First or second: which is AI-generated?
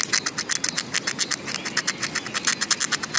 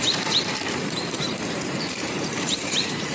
second